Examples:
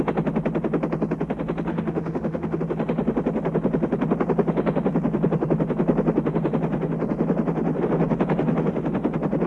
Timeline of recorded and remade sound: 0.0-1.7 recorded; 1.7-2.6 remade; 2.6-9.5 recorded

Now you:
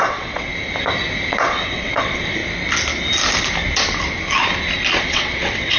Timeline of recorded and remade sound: 0.0-0.5 remade; 0.5-1.3 recorded; 1.3-2.4 remade; 2.4-5.0 recorded; 5.0-5.8 remade

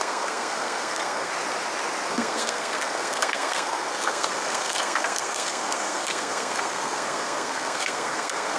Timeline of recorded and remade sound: 0.0-1.3 remade; 1.3-2.1 recorded; 2.1-8.6 remade

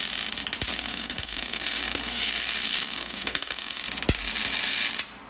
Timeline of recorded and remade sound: 0.0-0.7 recorded; 0.7-3.8 remade; 3.8-5.3 recorded

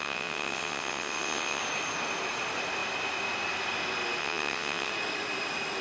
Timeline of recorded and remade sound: 0.0-1.6 remade; 1.6-4.2 recorded; 4.2-4.9 remade; 4.9-5.8 recorded

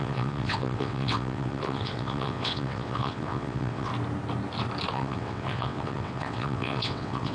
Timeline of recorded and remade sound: 0.0-3.9 remade; 3.9-4.9 recorded; 4.9-7.3 remade

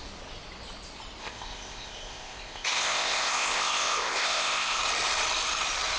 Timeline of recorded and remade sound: 0.0-1.2 recorded; 1.2-4.8 remade; 4.8-6.0 recorded